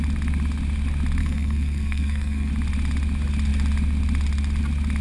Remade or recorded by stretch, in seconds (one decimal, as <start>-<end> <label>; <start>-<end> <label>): 0.0-1.2 recorded; 1.2-2.5 remade; 2.5-5.0 recorded